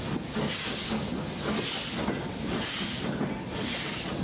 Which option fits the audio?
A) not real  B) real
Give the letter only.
B